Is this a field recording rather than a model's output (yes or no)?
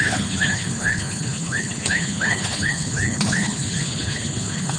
no